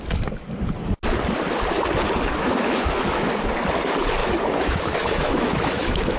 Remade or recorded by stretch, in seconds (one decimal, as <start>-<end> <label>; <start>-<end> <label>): 0.0-2.4 recorded; 2.4-3.3 remade; 3.3-4.2 recorded; 4.2-6.2 remade